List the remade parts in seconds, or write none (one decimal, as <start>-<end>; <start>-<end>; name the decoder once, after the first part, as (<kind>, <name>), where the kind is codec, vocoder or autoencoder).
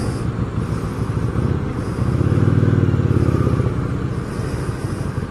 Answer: none